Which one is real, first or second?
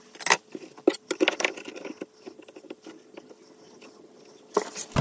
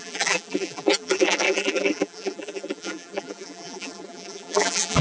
first